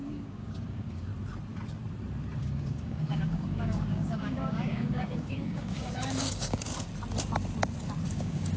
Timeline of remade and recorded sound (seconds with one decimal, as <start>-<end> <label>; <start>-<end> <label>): 0.0-1.1 remade; 1.1-2.4 recorded; 2.4-6.7 remade; 6.7-8.1 recorded; 8.1-8.6 remade